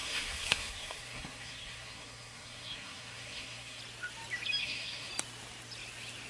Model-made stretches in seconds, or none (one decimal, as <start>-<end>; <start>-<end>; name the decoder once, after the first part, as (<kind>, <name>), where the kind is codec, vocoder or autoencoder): 0.0-3.8 (codec, SNAC); 4.6-5.1